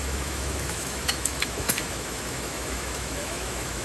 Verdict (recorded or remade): remade